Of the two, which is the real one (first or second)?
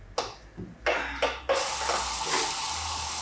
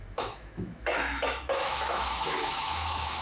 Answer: first